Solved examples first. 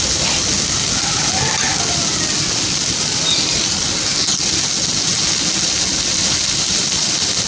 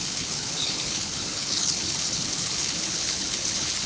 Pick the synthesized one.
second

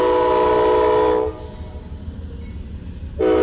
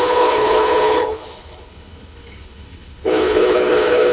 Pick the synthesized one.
second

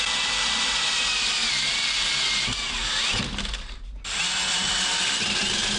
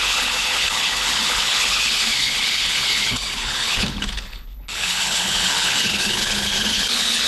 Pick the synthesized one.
second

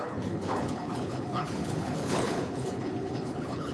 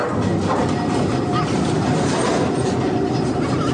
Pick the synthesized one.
first